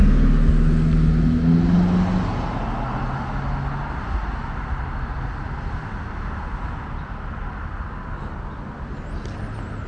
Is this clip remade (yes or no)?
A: no